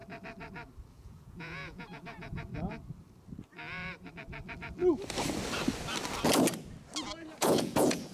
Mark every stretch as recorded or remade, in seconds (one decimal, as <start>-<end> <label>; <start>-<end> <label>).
0.0-0.9 recorded; 0.9-2.5 remade; 2.5-7.4 recorded; 7.4-8.1 remade